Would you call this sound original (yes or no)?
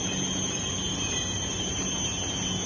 yes